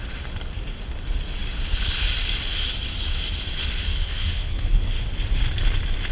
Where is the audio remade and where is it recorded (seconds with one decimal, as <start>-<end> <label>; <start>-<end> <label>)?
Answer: 0.0-3.9 recorded; 3.9-4.9 remade; 4.9-6.1 recorded